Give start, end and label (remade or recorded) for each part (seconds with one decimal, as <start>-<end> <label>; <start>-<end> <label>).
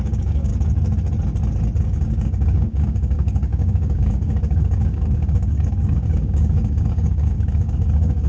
0.0-0.5 remade; 0.5-1.8 recorded; 1.8-8.3 remade